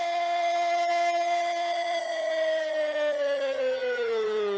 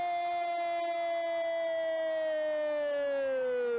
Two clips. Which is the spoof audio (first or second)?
first